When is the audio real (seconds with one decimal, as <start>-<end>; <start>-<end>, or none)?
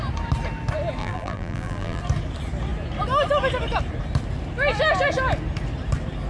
0.0-1.0; 2.0-6.3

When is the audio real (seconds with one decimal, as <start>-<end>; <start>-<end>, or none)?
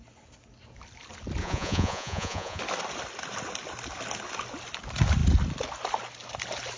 0.0-1.4; 2.6-6.8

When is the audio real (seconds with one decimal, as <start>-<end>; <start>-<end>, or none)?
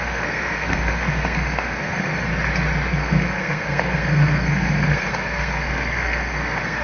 2.3-2.9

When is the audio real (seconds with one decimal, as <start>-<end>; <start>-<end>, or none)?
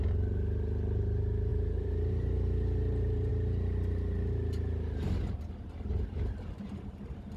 0.0-1.5; 3.3-7.4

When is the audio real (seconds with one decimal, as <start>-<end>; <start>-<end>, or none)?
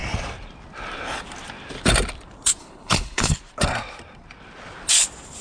0.0-2.6; 3.4-5.4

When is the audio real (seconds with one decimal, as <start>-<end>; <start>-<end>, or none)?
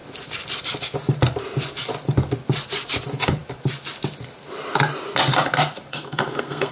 0.0-5.9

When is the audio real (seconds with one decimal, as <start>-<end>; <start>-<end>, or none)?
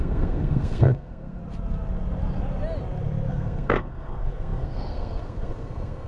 1.4-3.3